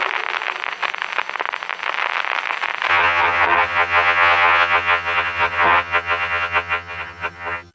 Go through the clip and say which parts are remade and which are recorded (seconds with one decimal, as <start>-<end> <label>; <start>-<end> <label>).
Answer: 0.0-2.9 recorded; 2.9-7.7 remade